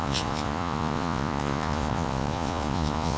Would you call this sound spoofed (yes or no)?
yes